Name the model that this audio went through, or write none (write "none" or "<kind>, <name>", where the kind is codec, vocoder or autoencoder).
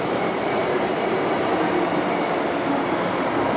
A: none